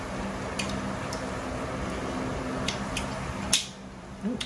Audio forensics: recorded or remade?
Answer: recorded